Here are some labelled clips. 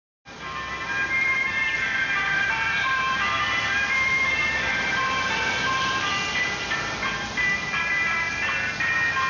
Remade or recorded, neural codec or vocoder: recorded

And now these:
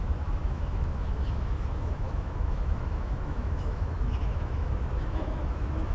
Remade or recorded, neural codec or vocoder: remade, autoencoder, DAC-VAE